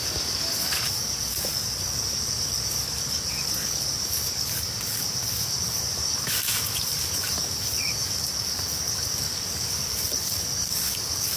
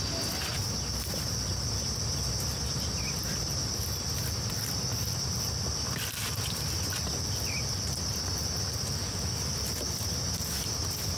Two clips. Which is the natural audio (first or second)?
second